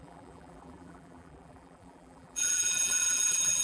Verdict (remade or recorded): remade